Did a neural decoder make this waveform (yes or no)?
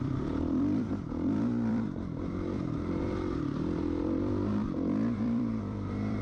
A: yes